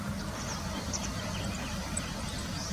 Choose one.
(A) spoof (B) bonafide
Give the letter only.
A